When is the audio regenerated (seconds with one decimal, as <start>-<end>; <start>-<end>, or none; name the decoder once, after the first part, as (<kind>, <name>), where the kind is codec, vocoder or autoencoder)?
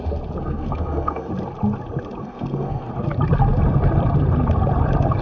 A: 0.4-1.3 (codec, SNAC); 2.2-2.9